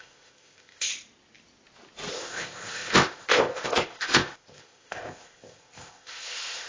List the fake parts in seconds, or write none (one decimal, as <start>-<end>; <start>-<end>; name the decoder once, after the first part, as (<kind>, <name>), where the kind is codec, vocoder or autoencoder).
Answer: 0.0-0.9 (codec, ZipCodec); 2.1-6.7